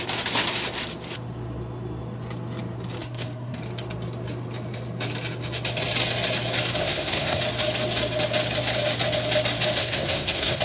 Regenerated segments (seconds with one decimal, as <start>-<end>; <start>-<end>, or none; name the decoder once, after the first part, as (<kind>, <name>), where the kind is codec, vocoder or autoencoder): 3.0-3.6 (codec, SNAC); 6.8-7.4; 9.8-10.6